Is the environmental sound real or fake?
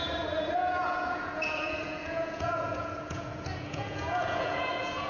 fake